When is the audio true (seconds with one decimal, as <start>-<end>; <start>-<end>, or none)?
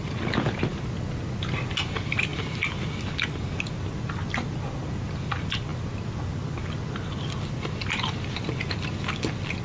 0.0-9.6